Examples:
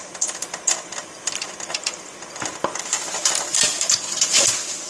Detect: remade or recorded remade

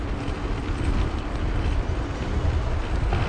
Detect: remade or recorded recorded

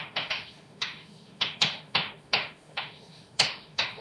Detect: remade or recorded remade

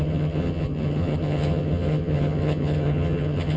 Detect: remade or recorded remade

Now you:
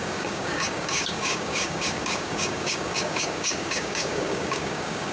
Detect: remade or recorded remade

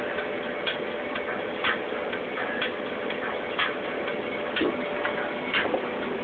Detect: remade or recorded recorded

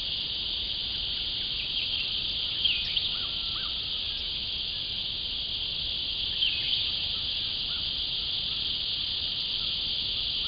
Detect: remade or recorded recorded